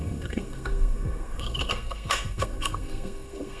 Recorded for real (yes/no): no